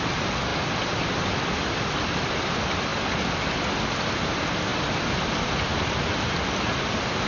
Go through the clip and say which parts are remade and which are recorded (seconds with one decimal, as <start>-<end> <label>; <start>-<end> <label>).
0.0-4.7 recorded; 4.7-5.9 remade; 5.9-7.3 recorded